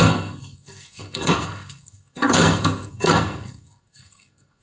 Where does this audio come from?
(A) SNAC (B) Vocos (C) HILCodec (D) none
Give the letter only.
A